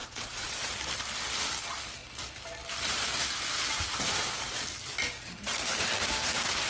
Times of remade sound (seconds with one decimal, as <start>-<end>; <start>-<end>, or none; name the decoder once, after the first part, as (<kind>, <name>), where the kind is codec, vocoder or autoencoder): 0.0-0.7 (vocoder, Vocos)